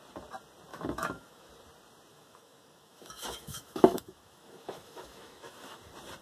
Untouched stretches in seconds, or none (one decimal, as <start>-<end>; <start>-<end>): 0.0-0.7; 1.5-2.1; 5.8-6.2